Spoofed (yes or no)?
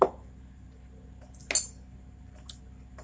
no